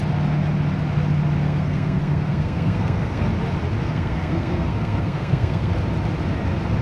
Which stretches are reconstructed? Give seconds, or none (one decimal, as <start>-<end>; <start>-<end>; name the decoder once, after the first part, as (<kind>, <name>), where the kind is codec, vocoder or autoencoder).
1.4-3.3 (codec, SNAC); 3.8-5.7